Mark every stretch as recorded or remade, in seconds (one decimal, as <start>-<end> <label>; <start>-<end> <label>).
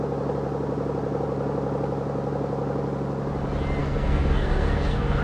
0.0-3.8 recorded; 3.8-5.2 remade